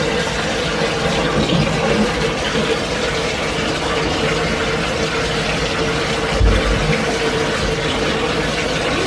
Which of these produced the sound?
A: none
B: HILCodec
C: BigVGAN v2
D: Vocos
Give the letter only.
A